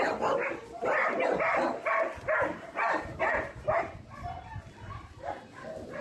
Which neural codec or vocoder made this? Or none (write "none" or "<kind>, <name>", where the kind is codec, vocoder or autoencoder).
none